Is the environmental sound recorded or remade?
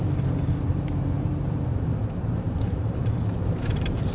remade